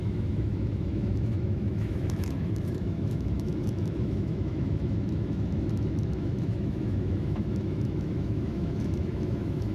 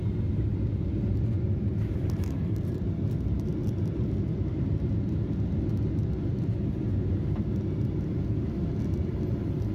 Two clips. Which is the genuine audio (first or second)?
second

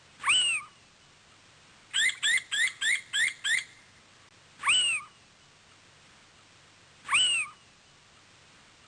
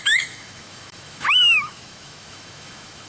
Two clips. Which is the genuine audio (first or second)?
first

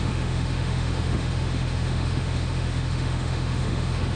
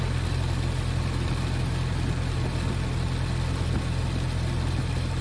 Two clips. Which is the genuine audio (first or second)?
second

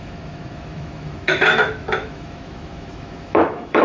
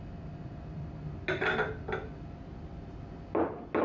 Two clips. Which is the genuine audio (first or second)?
second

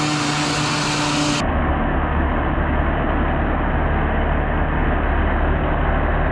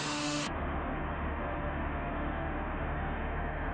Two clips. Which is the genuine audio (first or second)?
first